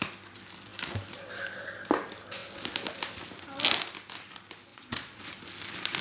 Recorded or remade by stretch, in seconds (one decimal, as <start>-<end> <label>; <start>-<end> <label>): 0.0-4.7 recorded; 4.7-5.2 remade; 5.2-6.0 recorded